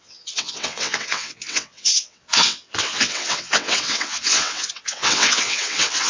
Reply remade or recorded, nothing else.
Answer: remade